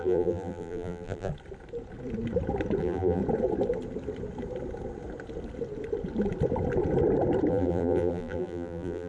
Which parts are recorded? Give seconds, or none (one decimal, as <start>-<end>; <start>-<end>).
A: 1.3-2.8; 3.2-7.5